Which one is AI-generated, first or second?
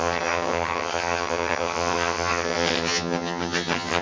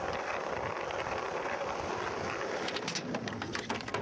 first